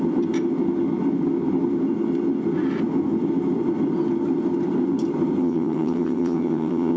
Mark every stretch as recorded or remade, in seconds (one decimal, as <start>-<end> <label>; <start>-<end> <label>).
0.0-5.4 recorded; 5.4-7.0 remade